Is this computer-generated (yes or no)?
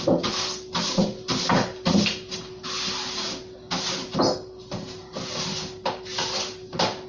no